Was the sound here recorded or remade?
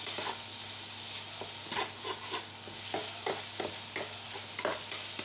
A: recorded